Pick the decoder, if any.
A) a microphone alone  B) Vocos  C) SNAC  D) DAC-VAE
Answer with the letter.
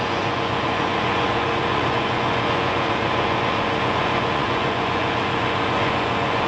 B